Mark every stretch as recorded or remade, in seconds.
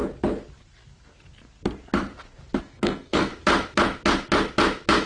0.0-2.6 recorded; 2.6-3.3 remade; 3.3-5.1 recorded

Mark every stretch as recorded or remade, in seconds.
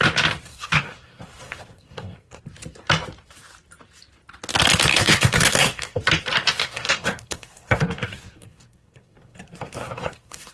0.0-0.5 recorded; 0.5-2.4 remade; 2.4-4.9 recorded; 4.9-6.0 remade; 6.0-6.6 recorded; 6.6-10.5 remade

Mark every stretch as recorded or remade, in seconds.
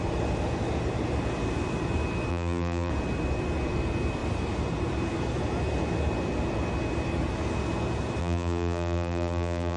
0.0-2.3 recorded; 2.3-2.9 remade; 2.9-8.2 recorded; 8.2-9.8 remade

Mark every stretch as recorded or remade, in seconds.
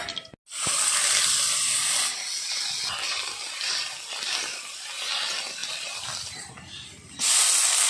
0.0-7.9 recorded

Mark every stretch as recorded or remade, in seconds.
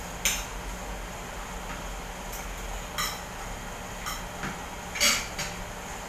0.0-6.1 recorded